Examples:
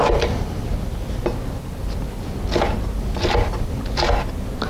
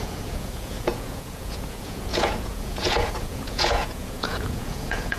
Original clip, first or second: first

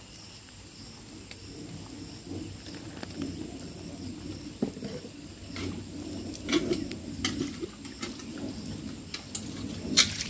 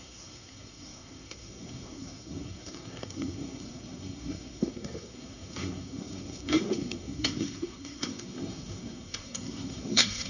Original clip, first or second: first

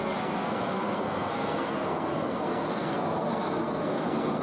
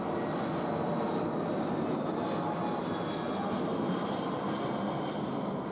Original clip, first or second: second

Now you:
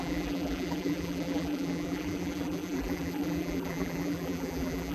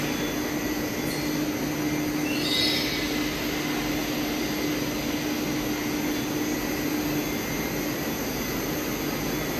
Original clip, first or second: second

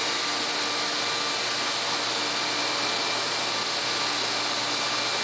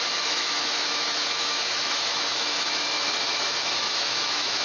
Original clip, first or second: first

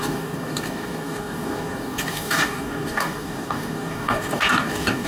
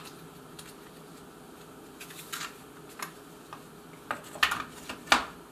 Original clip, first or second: second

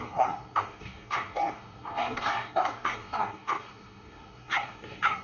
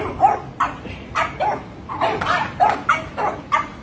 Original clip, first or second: second